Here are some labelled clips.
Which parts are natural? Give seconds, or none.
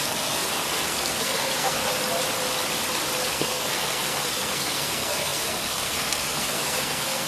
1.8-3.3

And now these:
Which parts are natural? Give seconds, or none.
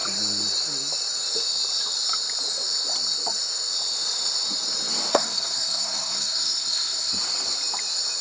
0.0-5.1; 7.1-8.2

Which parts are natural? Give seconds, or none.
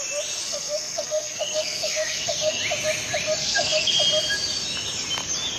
0.0-0.4; 2.6-3.4; 4.0-5.6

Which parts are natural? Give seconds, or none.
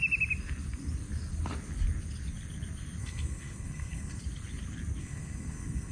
0.0-3.0; 4.2-5.0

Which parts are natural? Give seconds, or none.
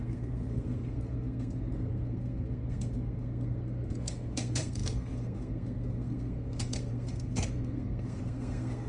none